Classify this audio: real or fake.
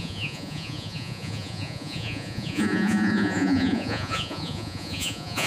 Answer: fake